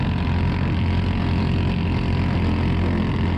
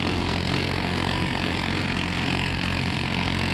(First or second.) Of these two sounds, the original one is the first